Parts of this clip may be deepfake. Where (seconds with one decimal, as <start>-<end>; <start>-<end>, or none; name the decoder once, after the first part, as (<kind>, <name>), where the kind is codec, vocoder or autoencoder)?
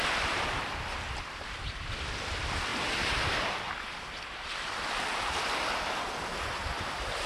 0.0-2.7 (vocoder, BigVGAN v2); 5.9-7.3